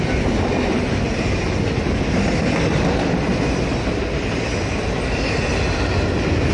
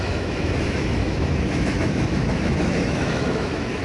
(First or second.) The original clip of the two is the first